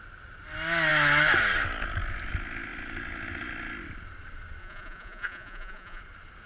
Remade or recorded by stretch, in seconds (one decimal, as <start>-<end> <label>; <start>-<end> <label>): 0.0-4.6 recorded; 4.6-6.0 remade; 6.0-6.5 recorded